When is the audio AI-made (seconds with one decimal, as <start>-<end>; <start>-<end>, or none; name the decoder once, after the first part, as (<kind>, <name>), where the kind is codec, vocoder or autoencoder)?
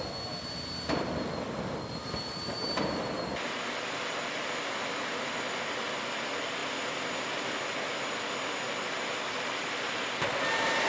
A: none